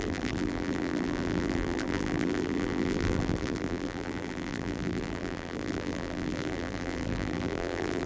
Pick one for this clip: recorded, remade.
remade